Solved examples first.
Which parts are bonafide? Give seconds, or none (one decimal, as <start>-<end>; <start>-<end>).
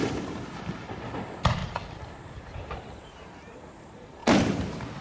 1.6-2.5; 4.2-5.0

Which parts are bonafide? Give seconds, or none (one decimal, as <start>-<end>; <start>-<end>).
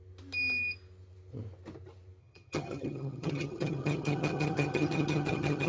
0.0-2.2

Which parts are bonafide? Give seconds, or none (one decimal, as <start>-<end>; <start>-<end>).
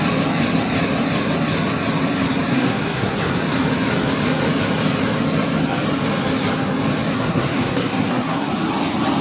0.0-2.5; 3.3-7.1; 8.5-9.2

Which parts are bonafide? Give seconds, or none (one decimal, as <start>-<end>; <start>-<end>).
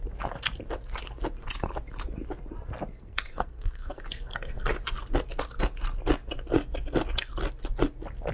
0.0-2.9; 4.0-8.3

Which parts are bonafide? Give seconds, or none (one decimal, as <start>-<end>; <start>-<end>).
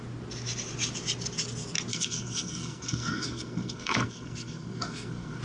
0.0-1.9